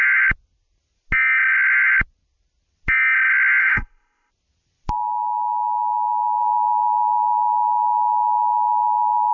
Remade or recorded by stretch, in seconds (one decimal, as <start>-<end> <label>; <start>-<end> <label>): 0.0-3.6 recorded; 3.6-4.3 remade; 4.3-9.3 recorded